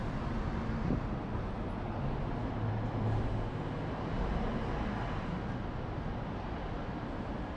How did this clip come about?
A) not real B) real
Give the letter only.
B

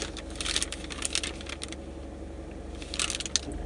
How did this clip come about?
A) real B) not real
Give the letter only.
A